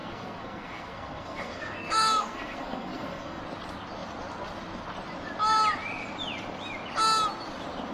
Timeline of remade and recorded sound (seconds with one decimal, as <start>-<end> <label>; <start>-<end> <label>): 0.0-3.4 remade; 3.4-7.9 recorded